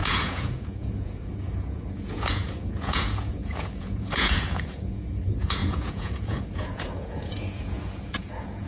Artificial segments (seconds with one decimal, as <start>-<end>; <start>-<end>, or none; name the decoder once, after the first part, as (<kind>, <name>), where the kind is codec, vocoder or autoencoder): 0.0-8.7 (vocoder, Vocos)